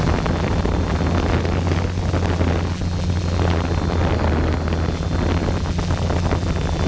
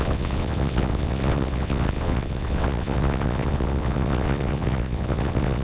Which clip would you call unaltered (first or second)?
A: first